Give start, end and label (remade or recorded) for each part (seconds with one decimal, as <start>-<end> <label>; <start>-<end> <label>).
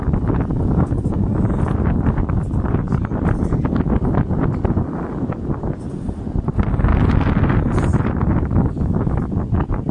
0.0-9.9 recorded